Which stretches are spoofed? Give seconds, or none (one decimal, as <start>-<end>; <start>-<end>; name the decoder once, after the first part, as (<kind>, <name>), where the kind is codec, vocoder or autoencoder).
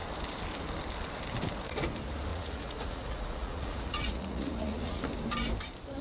2.3-5.0 (vocoder, Vocos)